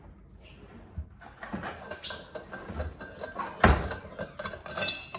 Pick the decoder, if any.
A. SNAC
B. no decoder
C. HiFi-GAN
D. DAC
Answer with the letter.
B